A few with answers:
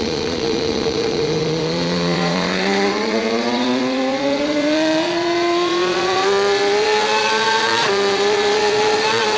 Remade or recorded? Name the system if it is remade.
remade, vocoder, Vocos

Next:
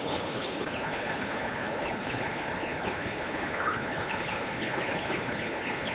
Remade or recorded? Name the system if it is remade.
remade, codec, HILCodec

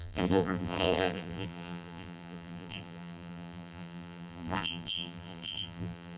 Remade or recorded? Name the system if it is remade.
remade, vocoder, BigVGAN v2